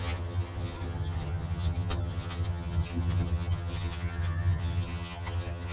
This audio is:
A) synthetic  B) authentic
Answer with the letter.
A